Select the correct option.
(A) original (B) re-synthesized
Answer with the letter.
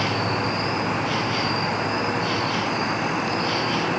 A